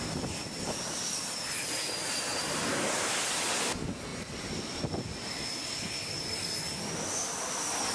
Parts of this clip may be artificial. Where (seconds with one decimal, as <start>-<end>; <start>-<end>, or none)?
none